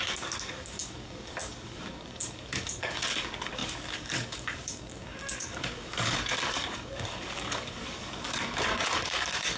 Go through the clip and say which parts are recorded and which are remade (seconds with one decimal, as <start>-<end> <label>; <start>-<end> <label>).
0.0-9.6 remade